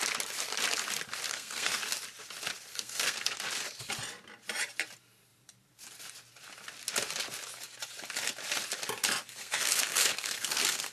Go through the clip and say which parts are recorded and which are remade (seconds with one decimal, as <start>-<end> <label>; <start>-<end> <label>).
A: 0.0-1.3 recorded; 1.3-1.8 remade; 1.8-2.7 recorded; 2.7-3.4 remade; 3.4-9.2 recorded; 9.2-10.9 remade